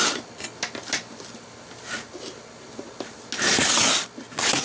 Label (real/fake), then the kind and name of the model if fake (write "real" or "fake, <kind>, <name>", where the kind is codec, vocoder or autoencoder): real